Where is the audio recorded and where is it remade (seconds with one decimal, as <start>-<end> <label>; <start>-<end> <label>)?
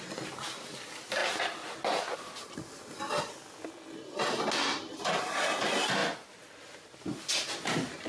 0.0-8.1 recorded